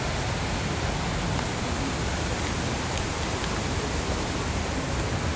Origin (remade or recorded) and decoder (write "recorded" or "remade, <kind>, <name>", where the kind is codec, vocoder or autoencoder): recorded